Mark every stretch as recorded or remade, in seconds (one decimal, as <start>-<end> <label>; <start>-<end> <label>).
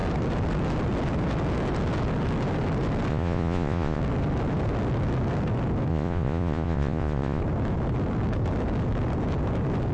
0.0-3.1 recorded; 3.1-4.0 remade; 4.0-5.9 recorded; 5.9-7.4 remade; 7.4-9.9 recorded